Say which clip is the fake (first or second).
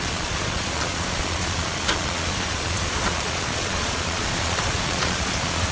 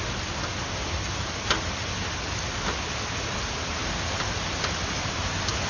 first